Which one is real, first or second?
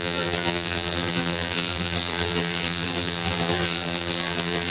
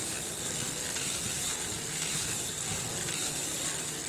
second